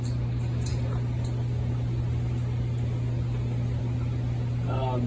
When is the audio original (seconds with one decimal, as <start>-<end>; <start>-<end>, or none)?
0.0-5.1